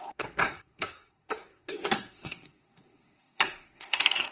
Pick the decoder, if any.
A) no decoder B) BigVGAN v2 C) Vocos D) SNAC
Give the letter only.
D